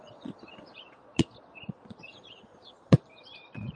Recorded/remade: remade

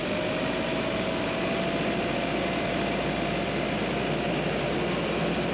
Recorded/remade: recorded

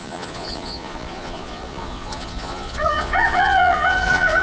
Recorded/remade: remade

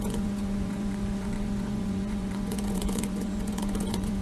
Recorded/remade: remade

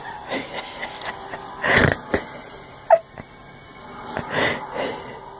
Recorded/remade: recorded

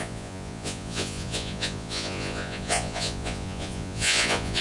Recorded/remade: remade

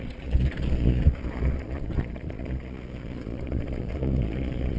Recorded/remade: remade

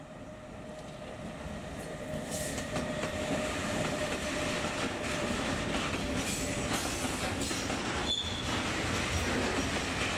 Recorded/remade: recorded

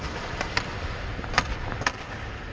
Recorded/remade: recorded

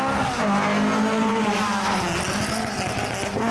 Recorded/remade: recorded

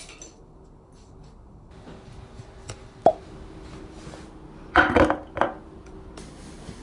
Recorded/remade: recorded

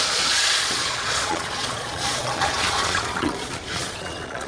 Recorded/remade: remade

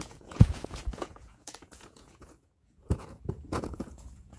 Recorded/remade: remade